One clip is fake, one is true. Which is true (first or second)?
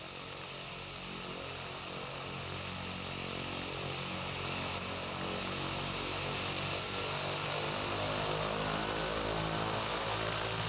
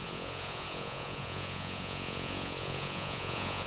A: first